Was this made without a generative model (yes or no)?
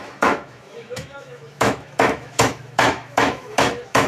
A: no